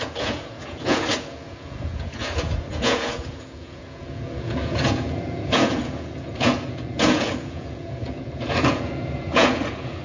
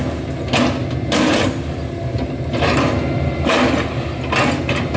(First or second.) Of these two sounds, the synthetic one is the first